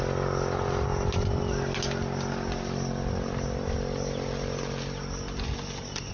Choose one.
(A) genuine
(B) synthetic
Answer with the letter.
A